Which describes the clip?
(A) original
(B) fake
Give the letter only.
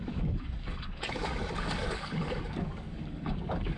B